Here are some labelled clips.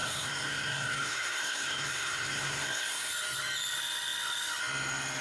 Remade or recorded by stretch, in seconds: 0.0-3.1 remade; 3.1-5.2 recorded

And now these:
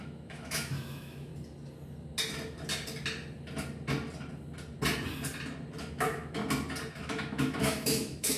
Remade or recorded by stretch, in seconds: 0.0-1.3 remade; 1.3-5.8 recorded; 5.8-6.4 remade; 6.4-7.0 recorded; 7.0-8.4 remade

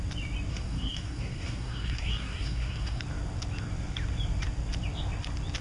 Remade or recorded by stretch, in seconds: 0.0-0.5 recorded; 0.5-3.0 remade; 3.0-5.6 recorded

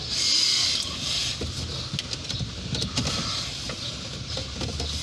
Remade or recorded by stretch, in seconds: 0.0-5.0 recorded

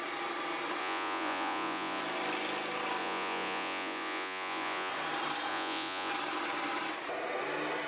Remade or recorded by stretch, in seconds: 0.0-0.8 recorded; 0.8-2.0 remade; 2.0-3.0 recorded; 3.0-4.9 remade; 4.9-5.5 recorded; 5.5-6.1 remade; 6.1-7.9 recorded

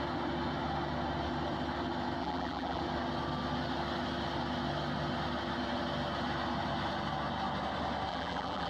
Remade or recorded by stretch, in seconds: 0.0-2.2 recorded; 2.2-2.8 remade; 2.8-8.1 recorded; 8.1-8.7 remade

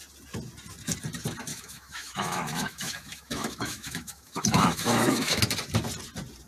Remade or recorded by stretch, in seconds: 0.0-1.5 recorded; 1.5-5.4 remade; 5.4-6.5 recorded

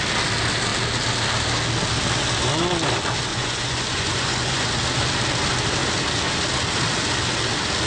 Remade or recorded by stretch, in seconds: 0.0-3.3 recorded; 3.3-4.7 remade; 4.7-7.9 recorded